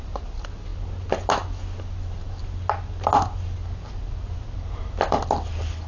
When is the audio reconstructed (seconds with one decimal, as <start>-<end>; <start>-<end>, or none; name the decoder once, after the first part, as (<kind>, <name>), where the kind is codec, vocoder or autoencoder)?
none